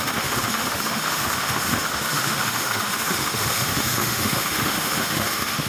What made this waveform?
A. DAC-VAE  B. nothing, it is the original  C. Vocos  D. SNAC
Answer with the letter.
A